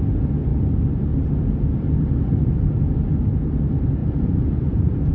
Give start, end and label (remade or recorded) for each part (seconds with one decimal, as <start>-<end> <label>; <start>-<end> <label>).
0.0-4.0 recorded; 4.0-5.1 remade